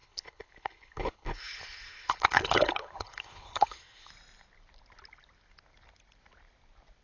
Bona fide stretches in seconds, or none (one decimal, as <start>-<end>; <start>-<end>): 4.1-7.0